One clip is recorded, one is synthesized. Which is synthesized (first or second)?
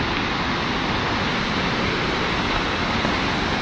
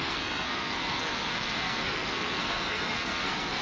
second